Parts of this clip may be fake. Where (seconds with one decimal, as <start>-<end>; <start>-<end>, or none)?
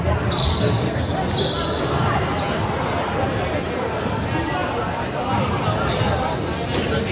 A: 0.4-1.0